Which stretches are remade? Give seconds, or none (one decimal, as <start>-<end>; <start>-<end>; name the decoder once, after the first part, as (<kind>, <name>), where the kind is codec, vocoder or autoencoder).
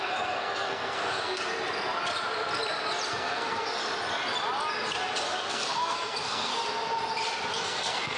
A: 0.0-1.5 (codec, SNAC); 3.1-3.8; 5.5-6.5; 7.5-8.2